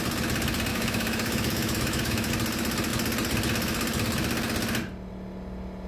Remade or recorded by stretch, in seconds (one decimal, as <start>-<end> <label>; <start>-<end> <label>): 0.0-0.7 recorded; 0.7-2.3 remade; 2.3-5.9 recorded